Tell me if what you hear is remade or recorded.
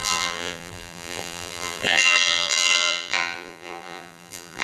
remade